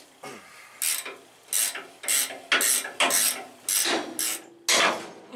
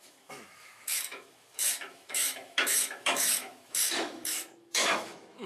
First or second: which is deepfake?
second